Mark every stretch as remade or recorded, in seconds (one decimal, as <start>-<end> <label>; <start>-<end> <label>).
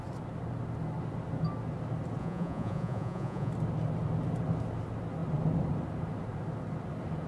0.0-2.2 recorded; 2.2-3.5 remade; 3.5-7.3 recorded